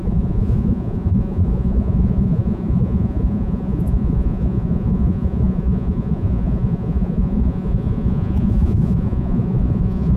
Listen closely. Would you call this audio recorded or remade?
remade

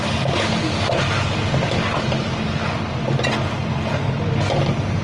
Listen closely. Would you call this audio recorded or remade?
recorded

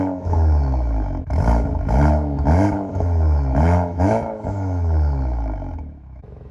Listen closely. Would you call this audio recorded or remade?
remade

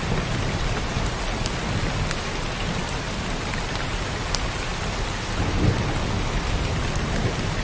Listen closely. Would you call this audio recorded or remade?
recorded